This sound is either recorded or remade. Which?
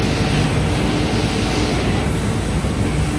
recorded